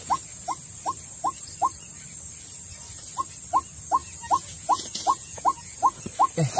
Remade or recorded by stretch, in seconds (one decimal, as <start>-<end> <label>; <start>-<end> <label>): 0.0-4.0 recorded; 4.0-6.0 remade; 6.0-6.6 recorded